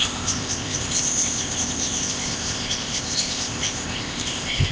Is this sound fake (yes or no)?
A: yes